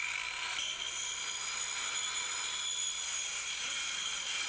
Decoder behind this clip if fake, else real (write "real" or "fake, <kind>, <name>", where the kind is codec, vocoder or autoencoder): real